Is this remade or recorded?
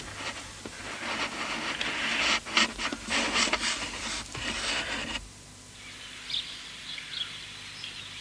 recorded